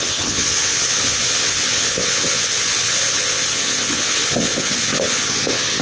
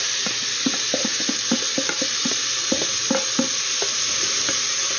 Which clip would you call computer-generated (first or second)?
first